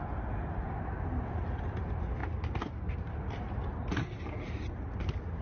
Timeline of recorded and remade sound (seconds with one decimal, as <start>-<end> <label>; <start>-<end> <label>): 0.0-5.4 recorded